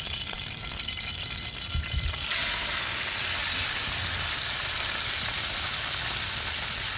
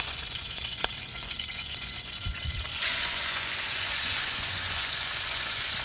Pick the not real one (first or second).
second